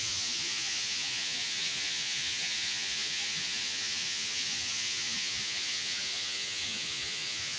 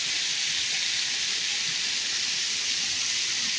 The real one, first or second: second